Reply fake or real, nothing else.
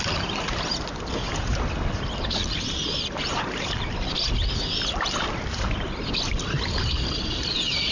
real